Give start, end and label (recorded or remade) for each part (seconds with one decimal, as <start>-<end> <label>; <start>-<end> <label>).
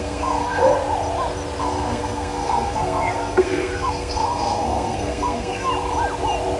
0.0-0.7 remade; 0.7-1.6 recorded; 1.6-5.7 remade; 5.7-6.6 recorded